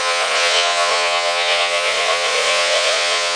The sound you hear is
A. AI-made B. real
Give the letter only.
A